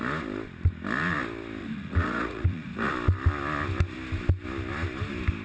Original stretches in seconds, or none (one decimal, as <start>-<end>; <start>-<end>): 0.0-1.6; 2.9-5.4